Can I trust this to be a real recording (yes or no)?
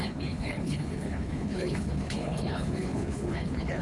no